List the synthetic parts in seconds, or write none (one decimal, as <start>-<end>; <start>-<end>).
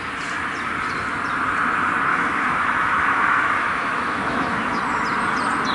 2.1-4.8